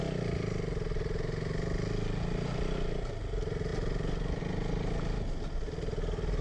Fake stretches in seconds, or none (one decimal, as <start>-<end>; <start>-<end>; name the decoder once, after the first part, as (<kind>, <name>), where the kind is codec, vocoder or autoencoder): none